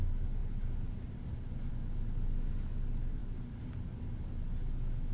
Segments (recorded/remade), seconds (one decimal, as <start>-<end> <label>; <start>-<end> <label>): 0.0-5.1 recorded